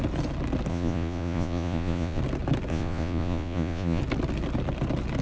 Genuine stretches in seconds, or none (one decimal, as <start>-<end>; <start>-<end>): 0.0-0.7; 2.2-2.7; 4.0-5.2